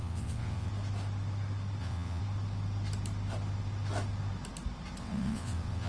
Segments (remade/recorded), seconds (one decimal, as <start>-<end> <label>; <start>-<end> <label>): 0.0-0.7 remade; 0.7-1.8 recorded; 1.8-2.2 remade; 2.2-5.0 recorded; 5.0-5.9 remade